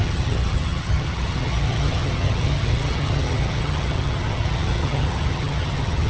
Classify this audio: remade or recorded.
remade